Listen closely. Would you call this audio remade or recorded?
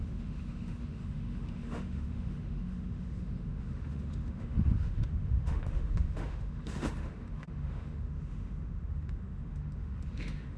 remade